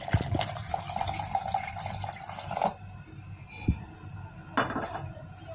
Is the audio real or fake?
real